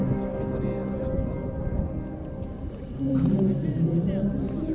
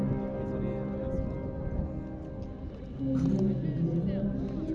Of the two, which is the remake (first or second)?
first